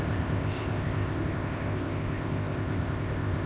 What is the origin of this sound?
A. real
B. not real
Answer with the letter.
B